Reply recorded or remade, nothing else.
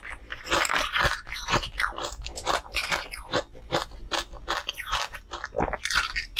recorded